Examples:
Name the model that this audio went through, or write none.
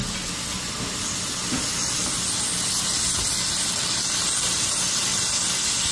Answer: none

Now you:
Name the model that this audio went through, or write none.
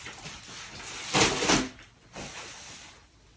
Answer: none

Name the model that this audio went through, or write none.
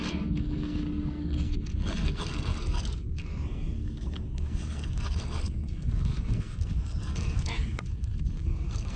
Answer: codec, SNAC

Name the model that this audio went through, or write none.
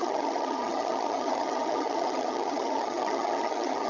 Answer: vocoder, HiFi-GAN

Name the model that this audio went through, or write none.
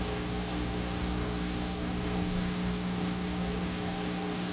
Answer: codec, DAC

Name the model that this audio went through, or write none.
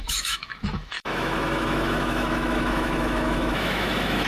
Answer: autoencoder, DAC-VAE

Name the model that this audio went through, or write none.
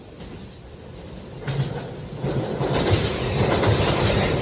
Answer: none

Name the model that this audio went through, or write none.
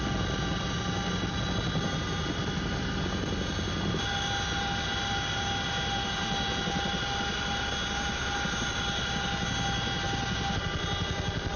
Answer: none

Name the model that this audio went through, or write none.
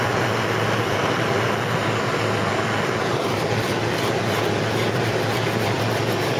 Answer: none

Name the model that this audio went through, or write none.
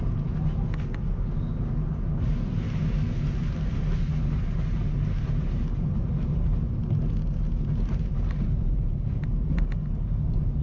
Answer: none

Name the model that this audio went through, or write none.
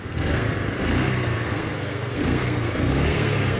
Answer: codec, SNAC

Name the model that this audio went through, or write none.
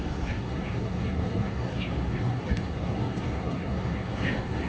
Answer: codec, SNAC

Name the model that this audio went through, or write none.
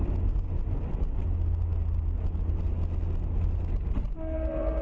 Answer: none